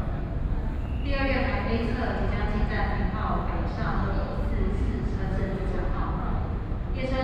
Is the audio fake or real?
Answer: real